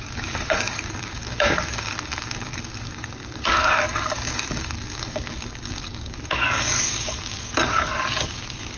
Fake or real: fake